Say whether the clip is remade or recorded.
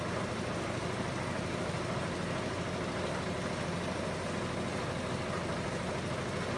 recorded